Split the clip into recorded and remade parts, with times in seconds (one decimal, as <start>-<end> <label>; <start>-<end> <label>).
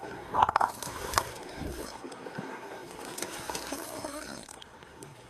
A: 0.0-5.3 remade